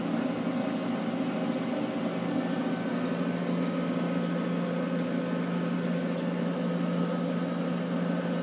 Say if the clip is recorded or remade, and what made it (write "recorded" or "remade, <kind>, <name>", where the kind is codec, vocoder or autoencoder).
recorded